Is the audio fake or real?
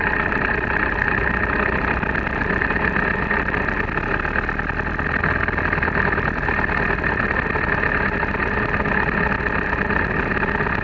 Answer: real